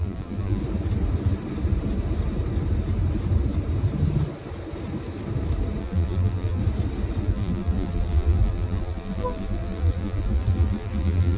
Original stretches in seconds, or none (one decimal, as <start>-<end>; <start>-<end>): 0.6-5.8; 6.6-7.2

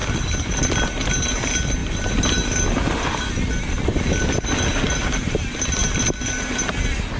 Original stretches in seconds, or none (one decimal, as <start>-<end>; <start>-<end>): 0.0-7.2

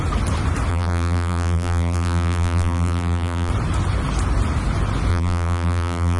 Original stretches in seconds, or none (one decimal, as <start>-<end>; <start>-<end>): 0.0-0.7; 3.5-5.1

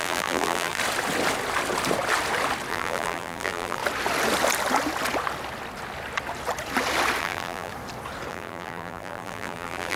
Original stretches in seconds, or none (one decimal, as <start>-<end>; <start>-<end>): 0.8-2.7; 3.8-7.2; 7.7-8.3

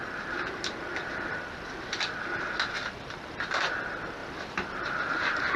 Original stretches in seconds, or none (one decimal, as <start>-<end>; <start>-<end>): 0.0-0.9; 1.7-2.8; 3.7-4.2

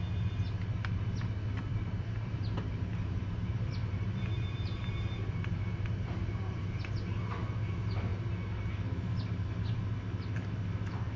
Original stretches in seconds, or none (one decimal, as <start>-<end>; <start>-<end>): 0.0-1.7; 6.8-11.2